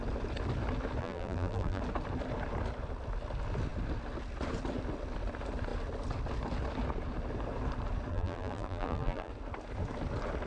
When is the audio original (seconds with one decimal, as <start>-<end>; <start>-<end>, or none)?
0.0-1.0; 1.8-8.1; 9.3-10.5